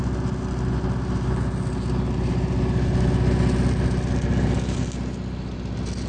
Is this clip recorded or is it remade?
recorded